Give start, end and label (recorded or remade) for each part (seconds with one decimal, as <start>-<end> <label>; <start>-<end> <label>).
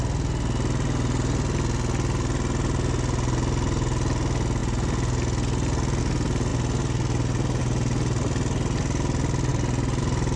0.0-10.4 recorded